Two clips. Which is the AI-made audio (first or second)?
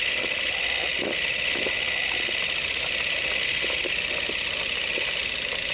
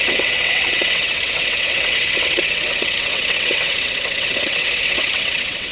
second